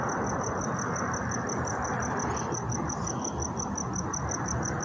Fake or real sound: real